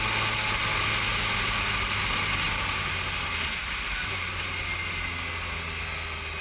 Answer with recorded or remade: recorded